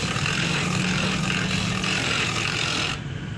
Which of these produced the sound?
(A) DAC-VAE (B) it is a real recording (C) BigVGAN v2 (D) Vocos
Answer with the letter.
B